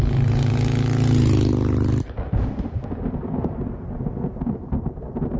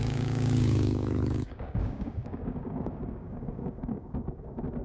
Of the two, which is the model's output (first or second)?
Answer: second